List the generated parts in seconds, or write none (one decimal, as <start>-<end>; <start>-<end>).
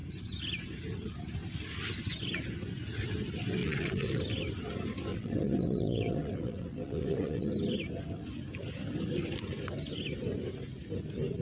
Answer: 3.6-4.2; 5.1-7.5